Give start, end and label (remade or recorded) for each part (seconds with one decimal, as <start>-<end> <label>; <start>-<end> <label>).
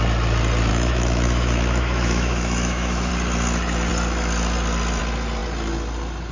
0.0-0.7 recorded; 0.7-3.1 remade; 3.1-6.3 recorded